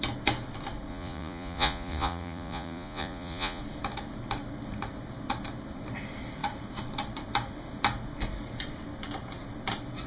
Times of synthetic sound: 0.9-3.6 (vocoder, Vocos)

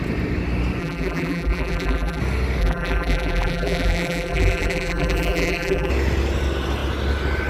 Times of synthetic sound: 0.8-2.2 (vocoder, BigVGAN v2); 2.6-5.9

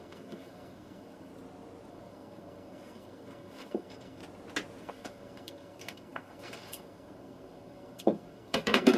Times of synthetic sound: 0.0-1.3 (codec, SNAC); 1.9-4.2; 4.8-9.0